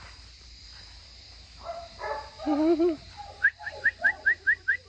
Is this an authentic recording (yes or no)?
no